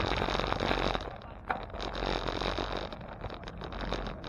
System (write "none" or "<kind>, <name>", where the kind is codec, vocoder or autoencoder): none